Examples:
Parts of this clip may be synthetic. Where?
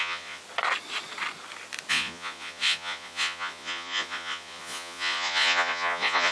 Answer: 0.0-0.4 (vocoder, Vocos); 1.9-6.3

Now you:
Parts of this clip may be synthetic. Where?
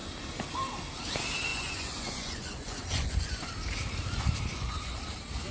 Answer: 1.5-3.5 (vocoder, Vocos); 4.5-5.0